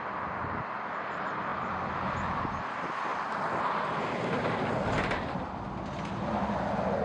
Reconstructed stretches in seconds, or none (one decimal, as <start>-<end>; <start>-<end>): none